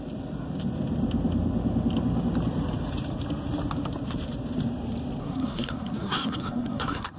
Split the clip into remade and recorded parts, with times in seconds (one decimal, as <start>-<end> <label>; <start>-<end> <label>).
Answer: 0.0-5.2 recorded; 5.2-7.2 remade

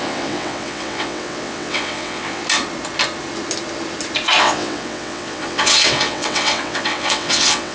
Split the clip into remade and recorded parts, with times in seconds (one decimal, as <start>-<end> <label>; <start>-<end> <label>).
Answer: 0.0-2.4 remade; 2.4-4.4 recorded; 4.4-7.7 remade

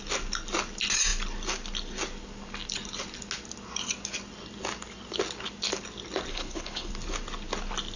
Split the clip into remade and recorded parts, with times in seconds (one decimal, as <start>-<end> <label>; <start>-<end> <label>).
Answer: 0.0-6.3 recorded; 6.3-6.9 remade; 6.9-8.0 recorded

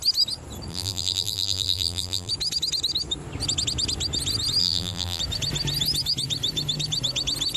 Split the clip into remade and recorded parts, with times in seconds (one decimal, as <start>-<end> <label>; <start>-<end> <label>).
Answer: 0.0-0.7 recorded; 0.7-2.3 remade; 2.3-4.6 recorded; 4.6-5.2 remade; 5.2-7.6 recorded

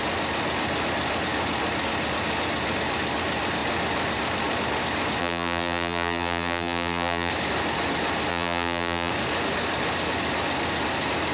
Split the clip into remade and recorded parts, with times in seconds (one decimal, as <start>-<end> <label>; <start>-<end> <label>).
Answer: 0.0-5.2 recorded; 5.2-7.3 remade; 7.3-8.3 recorded; 8.3-9.1 remade; 9.1-11.3 recorded

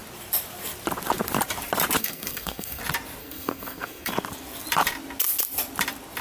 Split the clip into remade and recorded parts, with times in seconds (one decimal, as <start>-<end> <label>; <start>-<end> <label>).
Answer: 0.0-2.0 recorded; 2.0-2.8 remade; 2.8-3.2 recorded; 3.2-4.1 remade; 4.1-6.2 recorded

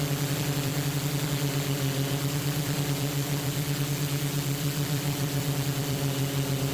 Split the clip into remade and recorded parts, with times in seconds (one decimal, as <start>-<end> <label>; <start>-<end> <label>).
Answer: 0.0-6.7 remade

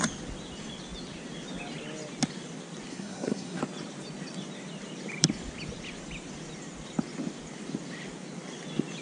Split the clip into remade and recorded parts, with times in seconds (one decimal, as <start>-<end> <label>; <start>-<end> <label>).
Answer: 0.0-2.9 recorded; 2.9-3.6 remade; 3.6-9.0 recorded